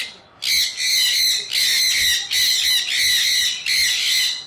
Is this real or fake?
real